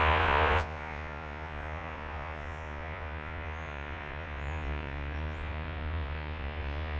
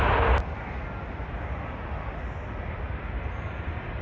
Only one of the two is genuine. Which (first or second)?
second